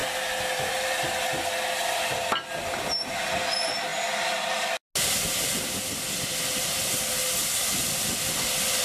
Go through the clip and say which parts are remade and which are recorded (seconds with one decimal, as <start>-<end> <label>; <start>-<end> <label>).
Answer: 0.0-8.8 recorded